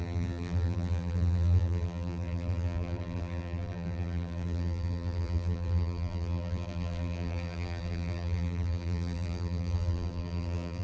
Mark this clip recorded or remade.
remade